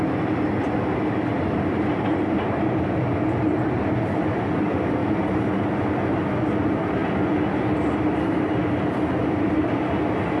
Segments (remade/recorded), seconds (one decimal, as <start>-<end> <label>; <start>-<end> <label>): 0.0-1.3 recorded; 1.3-4.5 remade; 4.5-5.0 recorded; 5.0-5.6 remade; 5.6-10.4 recorded